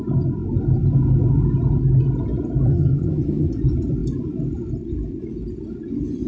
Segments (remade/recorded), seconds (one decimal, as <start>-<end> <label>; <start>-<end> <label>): 0.0-2.7 recorded; 2.7-3.5 remade; 3.5-6.3 recorded